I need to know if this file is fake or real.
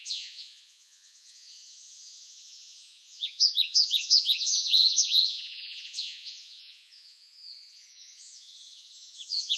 fake